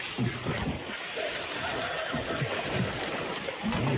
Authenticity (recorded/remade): recorded